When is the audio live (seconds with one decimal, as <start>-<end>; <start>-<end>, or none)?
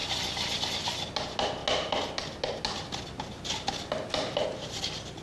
0.0-5.2